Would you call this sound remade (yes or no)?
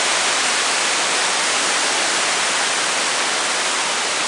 no